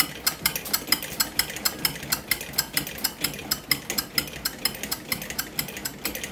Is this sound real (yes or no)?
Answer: yes